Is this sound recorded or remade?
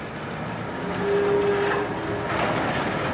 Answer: recorded